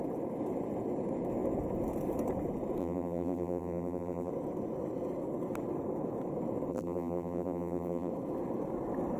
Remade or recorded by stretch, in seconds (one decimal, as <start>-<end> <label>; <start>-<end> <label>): 0.0-2.8 recorded; 2.8-4.3 remade; 4.3-6.7 recorded; 6.7-8.1 remade; 8.1-9.2 recorded